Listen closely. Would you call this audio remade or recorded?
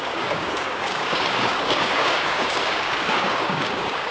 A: remade